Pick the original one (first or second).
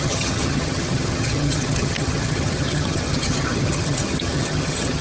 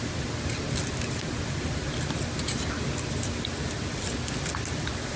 second